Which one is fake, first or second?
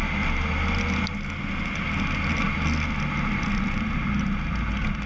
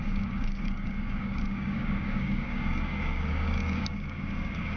second